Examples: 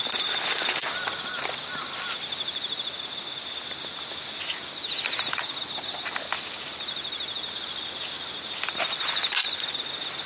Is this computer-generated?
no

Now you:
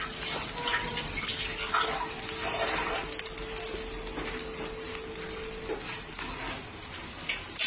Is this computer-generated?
no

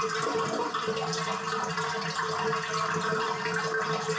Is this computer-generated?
no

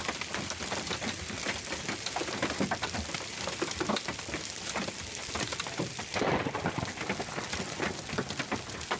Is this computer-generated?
no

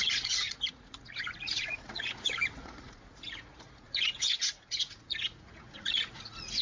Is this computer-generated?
yes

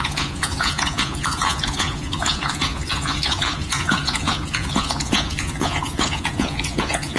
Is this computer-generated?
yes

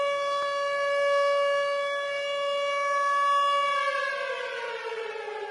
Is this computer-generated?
no